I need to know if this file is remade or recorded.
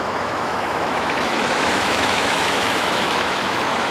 remade